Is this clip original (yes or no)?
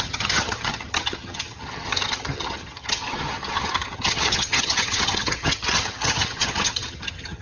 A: no